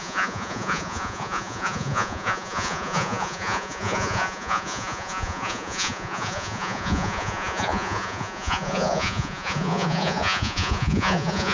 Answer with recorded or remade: remade